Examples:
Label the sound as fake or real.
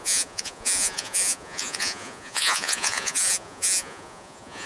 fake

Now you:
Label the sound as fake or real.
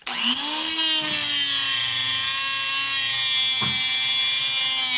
real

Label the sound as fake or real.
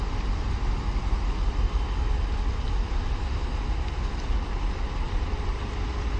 real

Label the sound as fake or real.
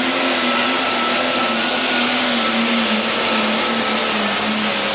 real